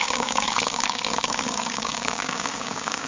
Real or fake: fake